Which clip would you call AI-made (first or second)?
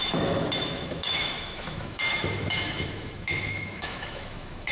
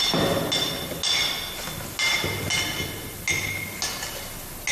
first